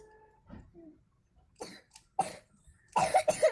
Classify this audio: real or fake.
real